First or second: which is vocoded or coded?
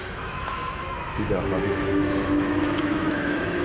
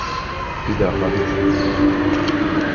first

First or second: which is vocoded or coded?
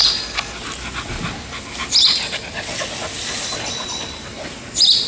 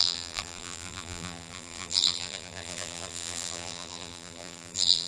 second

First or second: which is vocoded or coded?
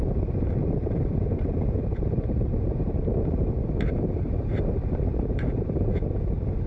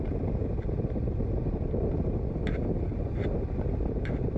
first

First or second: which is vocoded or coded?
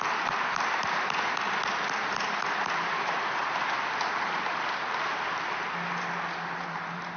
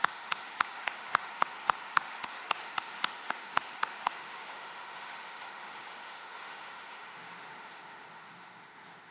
second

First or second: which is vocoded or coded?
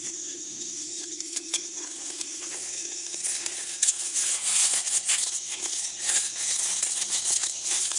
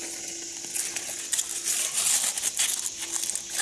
first